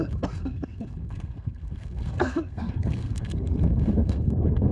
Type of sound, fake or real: fake